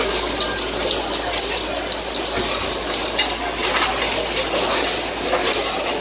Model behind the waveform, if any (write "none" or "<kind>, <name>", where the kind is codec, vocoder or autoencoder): none